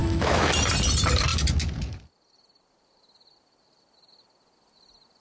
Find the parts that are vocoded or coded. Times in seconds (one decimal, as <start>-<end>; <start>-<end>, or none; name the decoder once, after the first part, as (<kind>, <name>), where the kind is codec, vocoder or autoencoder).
0.0-0.5 (autoencoder, DAC-VAE)